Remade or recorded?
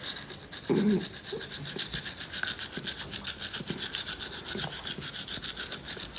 recorded